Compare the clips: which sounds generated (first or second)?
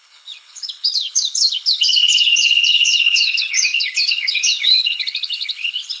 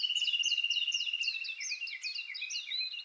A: first